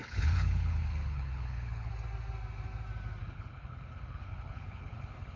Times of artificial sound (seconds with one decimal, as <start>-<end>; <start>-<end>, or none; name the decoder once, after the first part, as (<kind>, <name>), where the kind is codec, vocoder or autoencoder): 0.0-1.9 (codec, HILCodec); 3.2-5.4